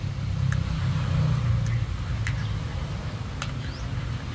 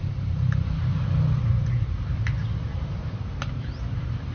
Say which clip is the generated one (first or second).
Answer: second